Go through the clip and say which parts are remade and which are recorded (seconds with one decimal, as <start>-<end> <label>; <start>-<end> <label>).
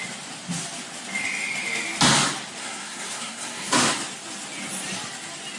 0.0-2.6 recorded; 2.6-3.9 remade; 3.9-5.6 recorded